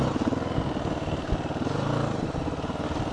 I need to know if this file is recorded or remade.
recorded